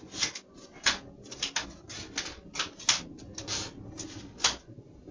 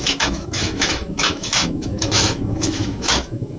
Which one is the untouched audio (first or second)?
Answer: first